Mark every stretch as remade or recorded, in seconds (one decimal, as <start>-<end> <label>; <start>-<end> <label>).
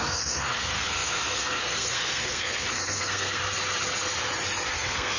0.0-3.4 remade; 3.4-4.7 recorded; 4.7-5.2 remade